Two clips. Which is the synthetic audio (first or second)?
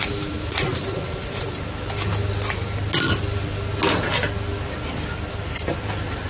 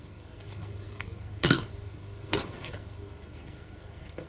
second